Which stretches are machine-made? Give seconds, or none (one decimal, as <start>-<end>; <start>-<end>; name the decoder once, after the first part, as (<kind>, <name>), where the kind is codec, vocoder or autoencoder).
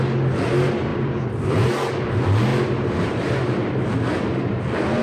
0.9-1.7 (vocoder, BigVGAN v2); 2.5-3.2